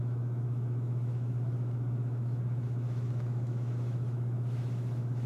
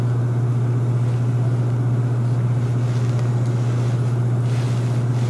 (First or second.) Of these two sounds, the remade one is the first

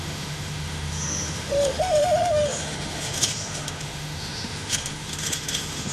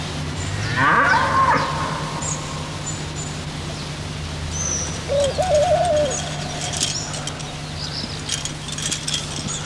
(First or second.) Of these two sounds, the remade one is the first